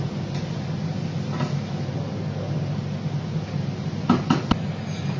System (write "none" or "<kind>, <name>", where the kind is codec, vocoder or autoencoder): none